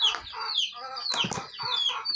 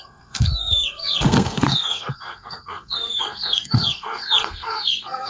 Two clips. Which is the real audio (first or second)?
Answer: first